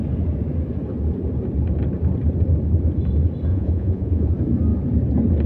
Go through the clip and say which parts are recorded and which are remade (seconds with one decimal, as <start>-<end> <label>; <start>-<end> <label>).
0.0-3.5 recorded; 3.5-4.3 remade; 4.3-5.5 recorded